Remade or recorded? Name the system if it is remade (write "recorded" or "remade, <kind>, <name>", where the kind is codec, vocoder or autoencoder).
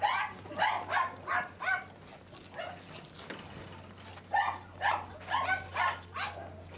recorded